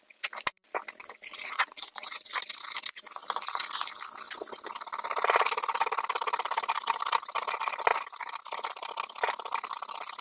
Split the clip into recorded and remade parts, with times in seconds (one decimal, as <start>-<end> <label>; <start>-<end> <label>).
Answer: 0.0-1.3 recorded; 1.3-2.4 remade; 2.4-10.2 recorded